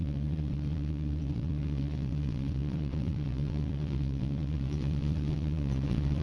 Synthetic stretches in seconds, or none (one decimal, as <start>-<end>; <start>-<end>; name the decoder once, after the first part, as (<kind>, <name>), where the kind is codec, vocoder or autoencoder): 0.0-6.2 (vocoder, WaveNeXt)